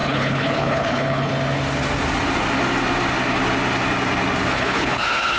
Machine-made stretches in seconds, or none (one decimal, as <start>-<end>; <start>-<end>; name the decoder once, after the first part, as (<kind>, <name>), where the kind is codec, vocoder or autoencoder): 0.0-1.3 (codec, HILCodec); 4.5-5.4

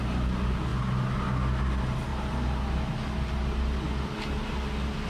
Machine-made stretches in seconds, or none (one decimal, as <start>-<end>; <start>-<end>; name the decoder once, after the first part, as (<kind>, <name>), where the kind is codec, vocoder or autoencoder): none

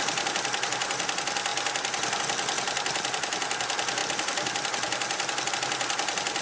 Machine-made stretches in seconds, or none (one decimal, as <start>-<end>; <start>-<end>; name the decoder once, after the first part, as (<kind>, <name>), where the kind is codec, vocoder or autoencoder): none

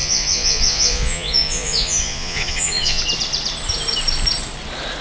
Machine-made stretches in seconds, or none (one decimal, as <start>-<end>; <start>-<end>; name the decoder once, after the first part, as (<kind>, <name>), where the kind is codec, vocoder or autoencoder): 0.0-3.0 (vocoder, Vocos)